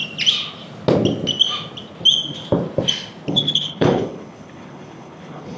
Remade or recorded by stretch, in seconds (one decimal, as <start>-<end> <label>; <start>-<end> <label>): 0.0-3.3 recorded; 3.3-5.6 remade